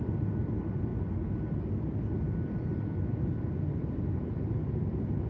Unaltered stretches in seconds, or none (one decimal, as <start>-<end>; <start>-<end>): 0.0-5.3